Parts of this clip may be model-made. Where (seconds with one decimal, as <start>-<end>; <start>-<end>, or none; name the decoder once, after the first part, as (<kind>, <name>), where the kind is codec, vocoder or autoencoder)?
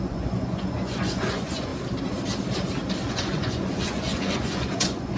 0.0-1.7 (vocoder, Vocos); 3.1-5.2